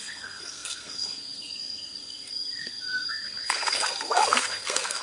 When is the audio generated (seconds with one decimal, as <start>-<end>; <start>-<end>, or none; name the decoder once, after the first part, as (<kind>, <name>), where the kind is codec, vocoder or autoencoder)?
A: 0.0-5.0 (codec, SNAC)